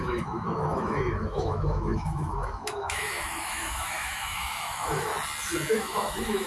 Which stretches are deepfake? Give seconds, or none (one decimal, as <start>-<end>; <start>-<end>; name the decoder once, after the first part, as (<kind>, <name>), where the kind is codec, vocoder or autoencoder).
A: 0.0-5.1 (autoencoder, DAC-VAE); 5.7-6.5